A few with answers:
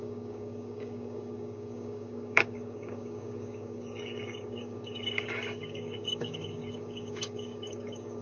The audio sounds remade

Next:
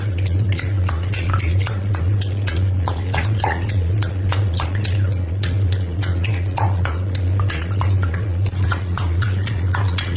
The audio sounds remade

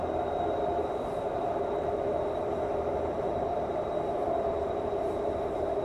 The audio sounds remade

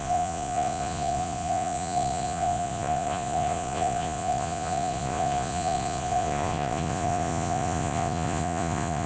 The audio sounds remade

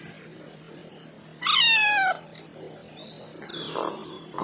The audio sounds recorded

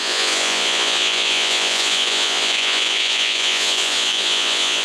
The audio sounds remade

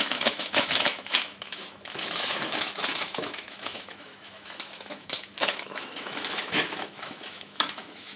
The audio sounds remade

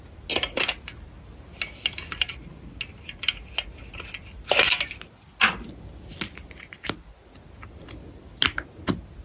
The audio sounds recorded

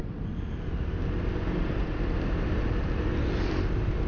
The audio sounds recorded